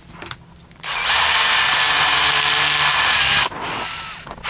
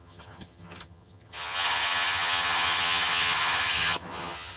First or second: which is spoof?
second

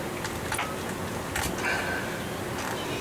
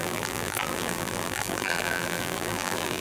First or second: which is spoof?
second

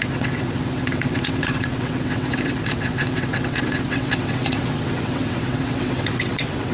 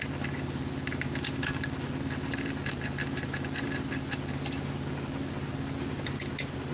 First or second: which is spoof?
first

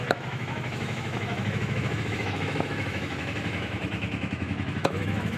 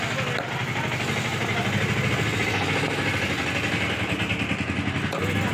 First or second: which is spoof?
first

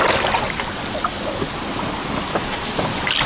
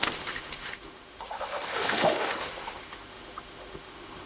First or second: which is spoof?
second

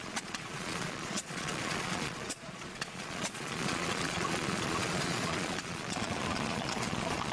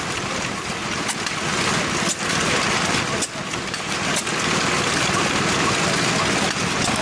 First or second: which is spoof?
first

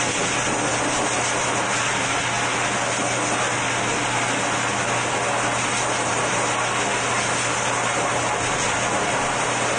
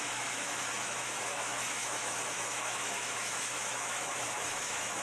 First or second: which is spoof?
second